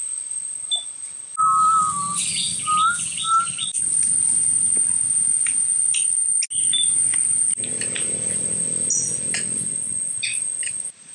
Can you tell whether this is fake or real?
real